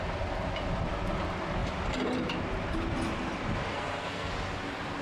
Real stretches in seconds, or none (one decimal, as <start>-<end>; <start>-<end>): 0.0-3.7; 4.3-5.0